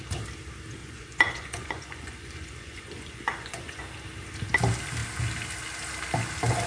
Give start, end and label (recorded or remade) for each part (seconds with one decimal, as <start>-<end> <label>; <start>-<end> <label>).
0.0-0.8 recorded; 0.8-3.8 remade; 3.8-6.7 recorded